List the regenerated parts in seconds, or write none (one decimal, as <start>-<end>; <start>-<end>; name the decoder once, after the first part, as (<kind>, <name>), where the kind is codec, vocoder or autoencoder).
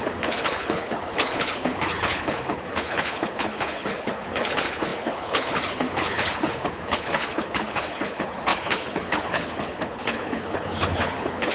0.0-11.5 (codec, HILCodec)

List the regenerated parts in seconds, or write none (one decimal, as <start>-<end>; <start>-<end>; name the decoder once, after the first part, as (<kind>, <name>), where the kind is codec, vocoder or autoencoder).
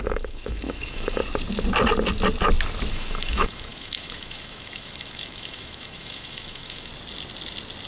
0.0-1.2 (autoencoder, DAC-VAE); 2.9-6.9